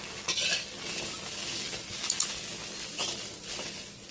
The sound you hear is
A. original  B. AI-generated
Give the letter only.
A